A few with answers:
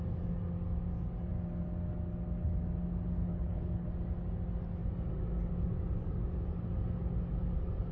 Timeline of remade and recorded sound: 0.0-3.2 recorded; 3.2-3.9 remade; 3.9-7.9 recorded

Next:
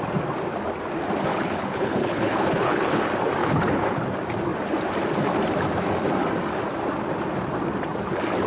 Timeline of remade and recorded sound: 0.0-1.3 recorded; 1.3-3.0 remade; 3.0-3.4 recorded; 3.4-4.0 remade; 4.0-8.5 recorded

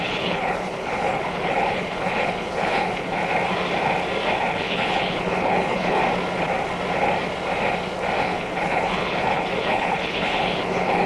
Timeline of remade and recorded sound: 0.0-3.2 remade; 3.2-4.5 recorded; 4.5-6.0 remade; 6.0-8.2 recorded; 8.2-11.1 remade

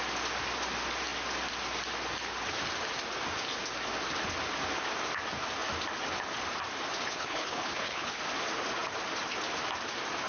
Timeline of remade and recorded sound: 0.0-7.1 recorded; 7.1-8.2 remade; 8.2-10.3 recorded

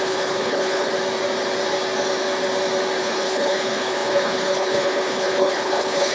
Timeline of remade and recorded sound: 0.0-0.9 remade; 0.9-3.0 recorded; 3.0-6.1 remade

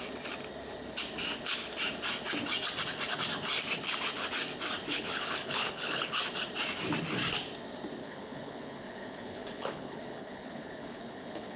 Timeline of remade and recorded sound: 0.0-4.9 recorded; 4.9-6.2 remade; 6.2-8.0 recorded; 8.0-11.6 remade

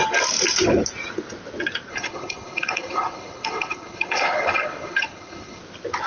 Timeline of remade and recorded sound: 0.0-1.9 recorded; 1.9-5.6 remade; 5.6-6.1 recorded